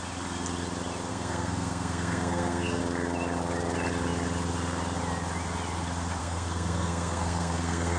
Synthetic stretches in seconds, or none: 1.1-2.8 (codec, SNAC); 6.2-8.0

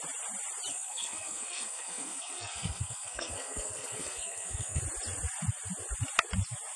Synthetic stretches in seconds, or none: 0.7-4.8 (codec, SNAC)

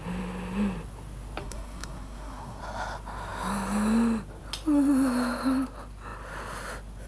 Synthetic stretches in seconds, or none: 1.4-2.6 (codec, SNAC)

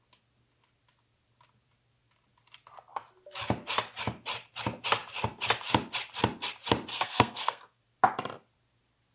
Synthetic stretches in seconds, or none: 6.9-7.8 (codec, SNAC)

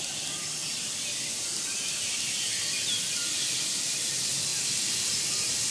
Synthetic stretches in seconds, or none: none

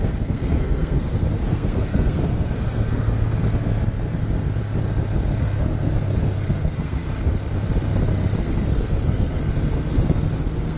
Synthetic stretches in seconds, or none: 0.0-3.4 (codec, SNAC); 5.4-7.0; 8.4-9.4; 9.9-10.8